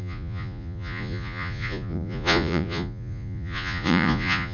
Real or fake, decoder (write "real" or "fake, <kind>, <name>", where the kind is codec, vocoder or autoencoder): fake, vocoder, Vocos